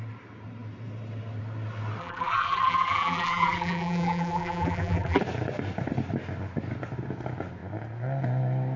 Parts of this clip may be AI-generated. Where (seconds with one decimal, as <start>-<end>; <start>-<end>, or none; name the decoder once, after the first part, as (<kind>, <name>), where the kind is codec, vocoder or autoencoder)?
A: 2.0-5.2 (vocoder, BigVGAN v2)